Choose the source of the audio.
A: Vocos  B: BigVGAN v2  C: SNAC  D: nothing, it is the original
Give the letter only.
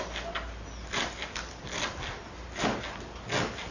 D